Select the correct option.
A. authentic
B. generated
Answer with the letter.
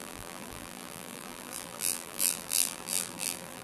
B